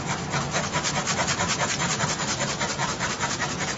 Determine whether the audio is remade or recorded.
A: recorded